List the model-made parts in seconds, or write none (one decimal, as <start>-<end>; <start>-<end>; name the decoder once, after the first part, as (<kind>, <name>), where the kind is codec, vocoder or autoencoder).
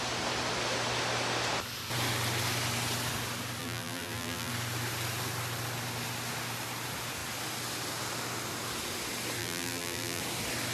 3.6-4.5 (vocoder, BigVGAN v2); 9.4-10.2